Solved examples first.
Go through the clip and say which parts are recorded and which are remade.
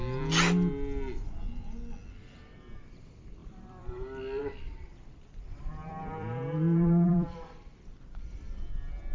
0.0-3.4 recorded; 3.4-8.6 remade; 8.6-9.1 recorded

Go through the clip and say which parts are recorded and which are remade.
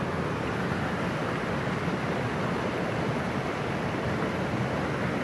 0.0-5.2 recorded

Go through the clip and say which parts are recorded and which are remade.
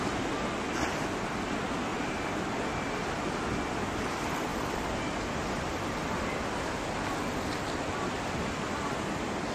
0.0-1.9 recorded; 1.9-3.1 remade; 3.1-4.5 recorded; 4.5-6.8 remade; 6.8-9.5 recorded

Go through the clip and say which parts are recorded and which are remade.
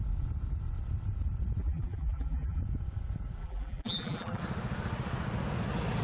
0.0-1.6 recorded; 1.6-2.6 remade; 2.6-3.4 recorded; 3.4-4.4 remade; 4.4-6.0 recorded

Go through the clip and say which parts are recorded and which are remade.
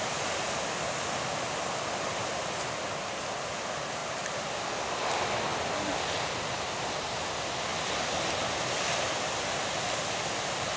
0.0-2.2 recorded; 2.2-3.0 remade; 3.0-4.0 recorded; 4.0-4.6 remade; 4.6-10.8 recorded